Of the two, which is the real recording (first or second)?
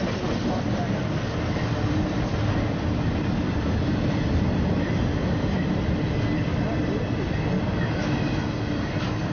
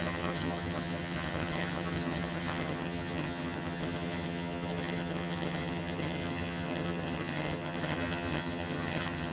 first